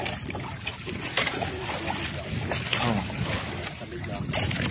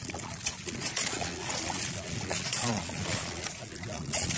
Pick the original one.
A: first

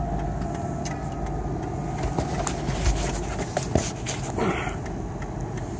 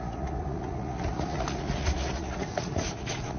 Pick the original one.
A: first